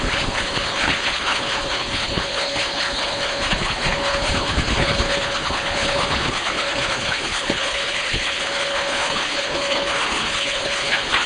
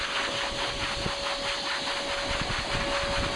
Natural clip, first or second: second